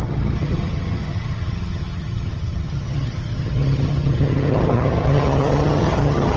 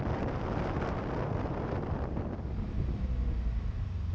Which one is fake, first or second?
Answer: first